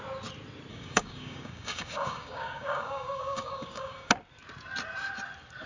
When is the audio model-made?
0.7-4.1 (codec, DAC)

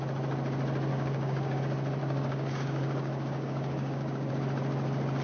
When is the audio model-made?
0.9-1.6 (codec, DAC); 2.0-4.3

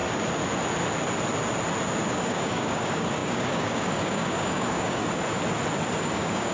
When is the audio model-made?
2.1-5.0 (codec, DAC); 6.0-6.5

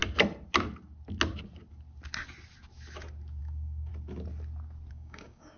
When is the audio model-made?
3.4-3.9 (codec, DAC); 4.9-5.6

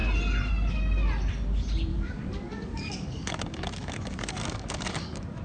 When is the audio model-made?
1.9-5.4 (codec, DAC)

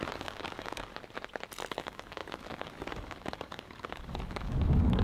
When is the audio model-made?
0.0-0.9 (codec, DAC); 1.8-5.0

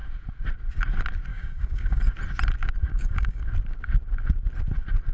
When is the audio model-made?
1.3-2.1 (codec, DAC); 2.8-3.4

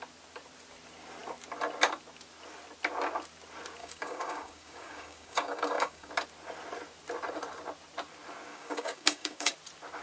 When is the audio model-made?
3.8-6.1 (codec, DAC); 8.5-9.5